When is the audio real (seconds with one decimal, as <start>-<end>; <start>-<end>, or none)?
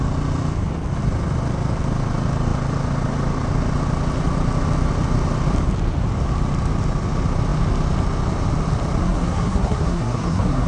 0.0-9.0